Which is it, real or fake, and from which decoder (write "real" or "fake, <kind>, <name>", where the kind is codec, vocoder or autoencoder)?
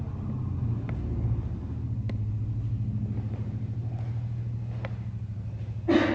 real